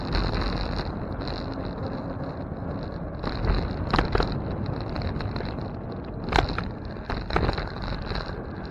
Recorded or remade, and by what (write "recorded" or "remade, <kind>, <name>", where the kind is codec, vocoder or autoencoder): recorded